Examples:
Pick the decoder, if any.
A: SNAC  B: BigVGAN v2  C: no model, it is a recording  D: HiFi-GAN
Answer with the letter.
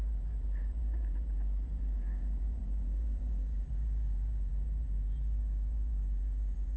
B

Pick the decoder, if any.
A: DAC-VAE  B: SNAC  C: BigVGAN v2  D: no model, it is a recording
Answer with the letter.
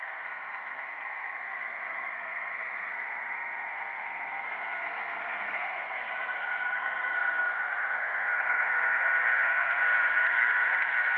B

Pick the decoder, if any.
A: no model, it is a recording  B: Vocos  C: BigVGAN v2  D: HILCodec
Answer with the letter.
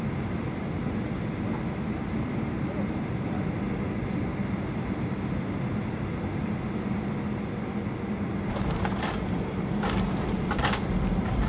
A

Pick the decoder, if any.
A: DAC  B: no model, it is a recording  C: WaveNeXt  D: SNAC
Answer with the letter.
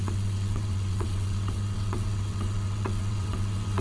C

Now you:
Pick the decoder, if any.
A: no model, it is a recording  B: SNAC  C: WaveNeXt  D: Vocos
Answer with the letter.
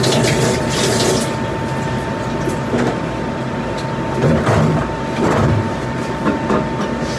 A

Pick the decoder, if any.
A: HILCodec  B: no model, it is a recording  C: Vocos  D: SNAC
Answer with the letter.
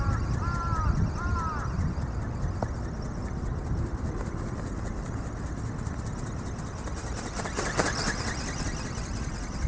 B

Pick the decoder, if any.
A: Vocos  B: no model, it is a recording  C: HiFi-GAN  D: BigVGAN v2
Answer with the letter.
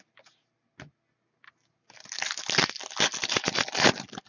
B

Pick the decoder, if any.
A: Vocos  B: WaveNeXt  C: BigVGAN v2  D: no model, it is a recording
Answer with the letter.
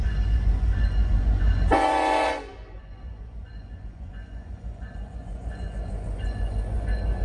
A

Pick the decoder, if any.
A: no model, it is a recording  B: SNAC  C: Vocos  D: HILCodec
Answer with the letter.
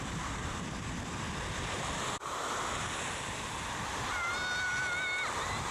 A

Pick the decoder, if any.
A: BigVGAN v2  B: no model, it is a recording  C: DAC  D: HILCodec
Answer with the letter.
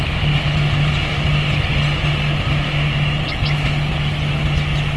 B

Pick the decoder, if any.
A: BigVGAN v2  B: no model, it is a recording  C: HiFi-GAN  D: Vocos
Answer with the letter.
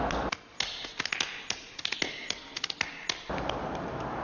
B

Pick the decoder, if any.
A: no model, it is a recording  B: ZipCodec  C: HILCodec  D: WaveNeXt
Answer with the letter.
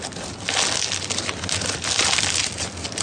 A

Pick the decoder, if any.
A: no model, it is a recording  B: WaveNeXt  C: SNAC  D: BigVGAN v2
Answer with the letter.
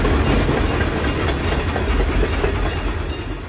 A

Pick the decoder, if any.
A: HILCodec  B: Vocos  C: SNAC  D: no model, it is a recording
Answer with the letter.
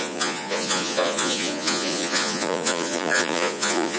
B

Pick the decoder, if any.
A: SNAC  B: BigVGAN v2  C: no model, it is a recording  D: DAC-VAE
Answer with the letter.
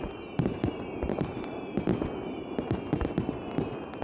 B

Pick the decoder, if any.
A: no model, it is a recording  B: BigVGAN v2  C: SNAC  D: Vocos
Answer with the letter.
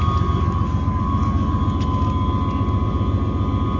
A